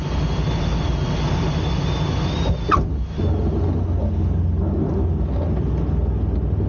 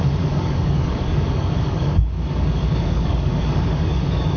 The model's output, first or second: second